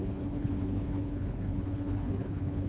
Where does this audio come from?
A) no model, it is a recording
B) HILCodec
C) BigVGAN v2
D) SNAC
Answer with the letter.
B